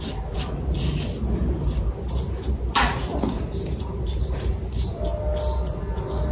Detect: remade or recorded recorded